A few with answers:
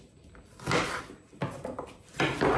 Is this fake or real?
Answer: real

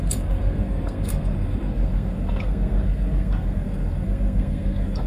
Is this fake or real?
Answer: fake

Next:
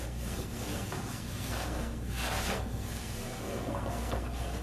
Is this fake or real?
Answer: fake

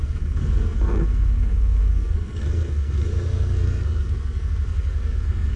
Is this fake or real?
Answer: fake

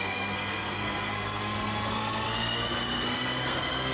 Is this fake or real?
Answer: fake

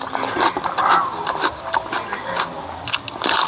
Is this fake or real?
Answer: real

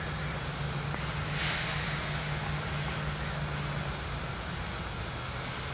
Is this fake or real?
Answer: real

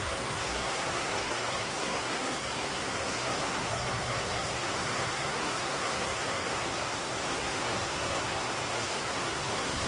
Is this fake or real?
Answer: fake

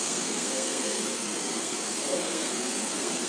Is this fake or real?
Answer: fake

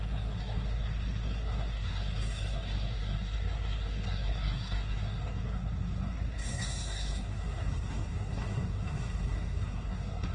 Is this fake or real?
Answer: fake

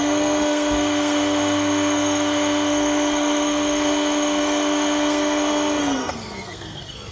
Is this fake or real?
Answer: fake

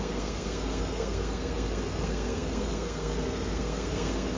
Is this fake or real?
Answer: fake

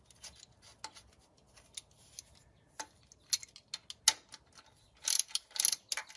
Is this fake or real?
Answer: real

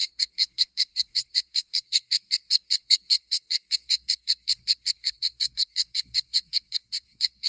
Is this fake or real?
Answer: fake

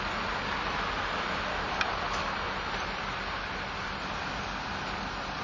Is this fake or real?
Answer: real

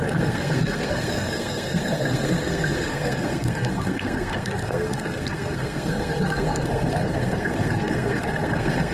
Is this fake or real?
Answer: fake